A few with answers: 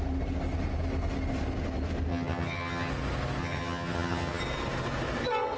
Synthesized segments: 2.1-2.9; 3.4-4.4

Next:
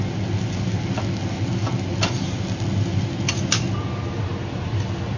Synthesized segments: none

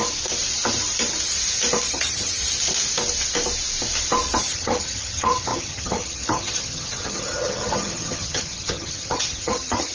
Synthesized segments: 1.9-2.4; 4.4-9.9

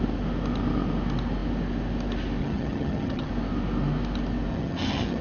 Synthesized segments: 2.4-3.3; 4.5-5.2

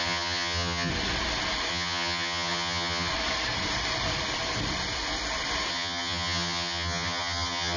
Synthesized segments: 0.0-0.9; 1.7-3.1; 5.7-7.8

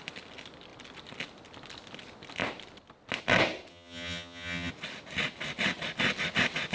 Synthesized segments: 3.7-4.7

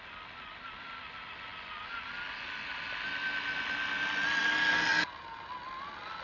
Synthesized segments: none